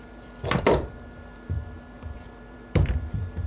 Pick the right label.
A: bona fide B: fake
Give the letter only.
B